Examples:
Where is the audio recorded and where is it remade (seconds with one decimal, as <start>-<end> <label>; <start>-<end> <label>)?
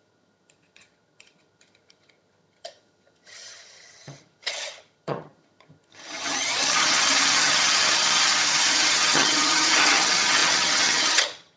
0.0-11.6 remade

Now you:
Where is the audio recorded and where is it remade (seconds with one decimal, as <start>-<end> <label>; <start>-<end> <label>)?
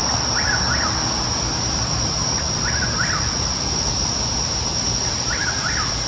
0.0-6.1 recorded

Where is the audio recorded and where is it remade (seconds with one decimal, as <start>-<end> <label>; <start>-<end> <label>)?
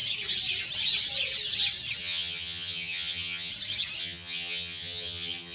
0.0-2.0 recorded; 2.0-3.5 remade; 3.5-4.0 recorded; 4.0-5.5 remade